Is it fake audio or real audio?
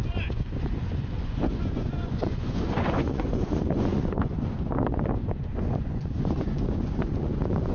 fake